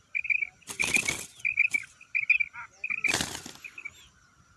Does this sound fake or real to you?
real